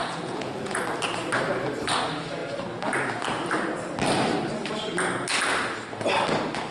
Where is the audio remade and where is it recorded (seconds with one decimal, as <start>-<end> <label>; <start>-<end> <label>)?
0.0-0.8 remade; 0.8-6.7 recorded